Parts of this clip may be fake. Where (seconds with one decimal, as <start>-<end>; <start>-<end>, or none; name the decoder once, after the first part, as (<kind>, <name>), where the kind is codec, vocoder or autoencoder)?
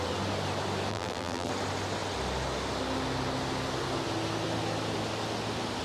0.9-1.5 (vocoder, BigVGAN v2)